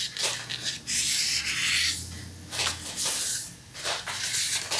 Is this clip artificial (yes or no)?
no